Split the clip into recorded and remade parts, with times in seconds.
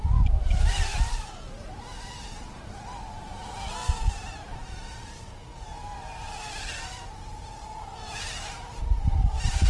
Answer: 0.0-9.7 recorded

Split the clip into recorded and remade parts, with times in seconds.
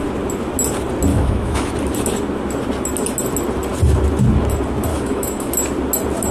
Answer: 0.0-1.1 recorded; 1.1-1.7 remade; 1.7-4.9 recorded; 4.9-5.5 remade; 5.5-6.3 recorded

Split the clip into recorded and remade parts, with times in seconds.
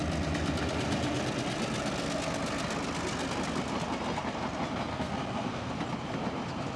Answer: 0.0-4.9 recorded; 4.9-5.7 remade; 5.7-6.8 recorded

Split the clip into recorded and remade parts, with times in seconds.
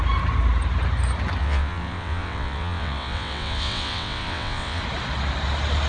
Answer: 0.0-1.4 recorded; 1.4-4.8 remade; 4.8-5.9 recorded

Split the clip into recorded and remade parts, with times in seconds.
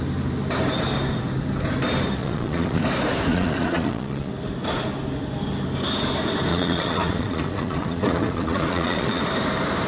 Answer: 0.0-2.2 recorded; 2.2-2.8 remade; 2.8-3.3 recorded; 3.3-4.3 remade; 4.3-6.5 recorded; 6.5-9.2 remade; 9.2-9.9 recorded